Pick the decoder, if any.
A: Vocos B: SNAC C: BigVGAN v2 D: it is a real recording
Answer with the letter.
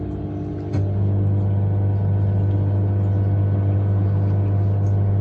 D